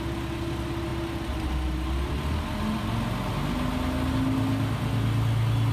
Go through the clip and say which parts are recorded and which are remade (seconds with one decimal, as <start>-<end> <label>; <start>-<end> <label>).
0.0-5.7 recorded